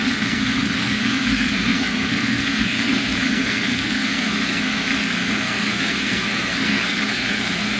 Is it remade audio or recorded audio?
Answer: remade